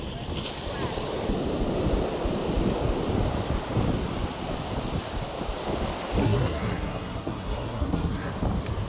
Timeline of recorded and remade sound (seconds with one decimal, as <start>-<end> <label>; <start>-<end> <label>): 0.0-6.2 recorded; 6.2-8.3 remade; 8.3-8.9 recorded